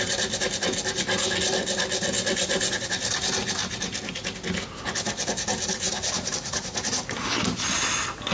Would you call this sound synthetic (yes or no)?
no